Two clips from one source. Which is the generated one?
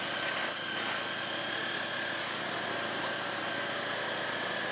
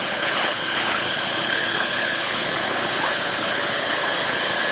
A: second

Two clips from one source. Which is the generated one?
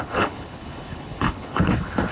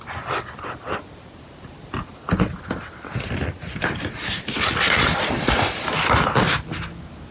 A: first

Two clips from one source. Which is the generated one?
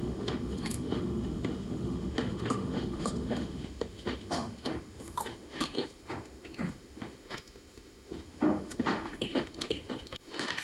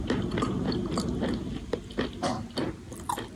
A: first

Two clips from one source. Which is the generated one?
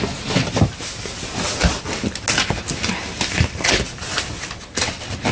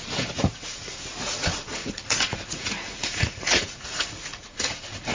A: second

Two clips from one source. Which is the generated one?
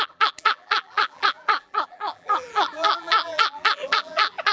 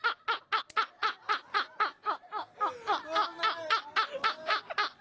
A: first